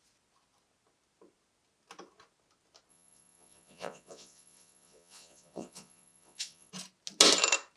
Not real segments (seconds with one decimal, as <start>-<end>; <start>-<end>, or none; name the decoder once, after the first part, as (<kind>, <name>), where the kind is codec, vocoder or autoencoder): 2.9-6.7 (vocoder, Vocos)